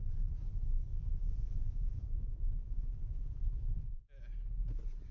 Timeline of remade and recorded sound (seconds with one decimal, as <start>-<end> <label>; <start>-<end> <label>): 0.0-0.9 recorded; 0.9-4.0 remade; 4.0-5.1 recorded